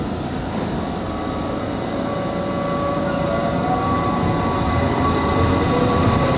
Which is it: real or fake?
real